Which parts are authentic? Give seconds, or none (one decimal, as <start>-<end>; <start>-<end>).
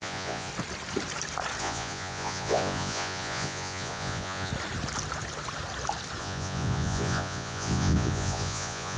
0.5-1.6; 4.5-6.2